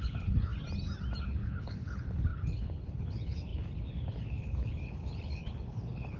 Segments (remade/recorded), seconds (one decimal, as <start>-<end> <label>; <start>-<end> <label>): 0.0-0.5 remade; 0.5-1.2 recorded; 1.2-6.2 remade